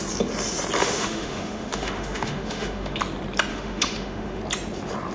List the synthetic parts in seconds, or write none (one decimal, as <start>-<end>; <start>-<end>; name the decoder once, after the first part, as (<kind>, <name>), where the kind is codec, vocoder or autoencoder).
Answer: 0.8-3.0 (autoencoder, DAC-VAE); 3.5-4.4